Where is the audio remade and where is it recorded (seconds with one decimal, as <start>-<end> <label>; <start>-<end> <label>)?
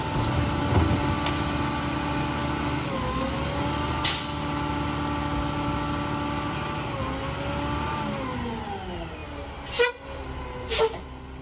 0.0-2.4 recorded; 2.4-3.2 remade; 3.2-11.4 recorded